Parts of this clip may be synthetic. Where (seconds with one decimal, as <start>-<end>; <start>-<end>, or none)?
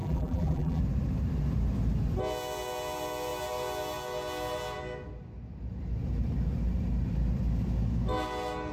0.0-0.8